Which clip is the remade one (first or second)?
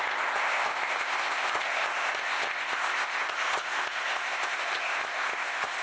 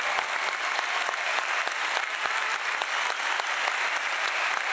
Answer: first